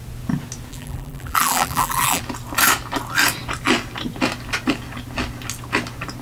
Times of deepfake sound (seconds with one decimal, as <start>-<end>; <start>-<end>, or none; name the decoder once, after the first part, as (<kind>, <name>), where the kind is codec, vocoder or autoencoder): 0.7-2.2 (vocoder, BigVGAN v2)